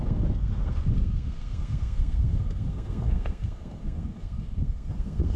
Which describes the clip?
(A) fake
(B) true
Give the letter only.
A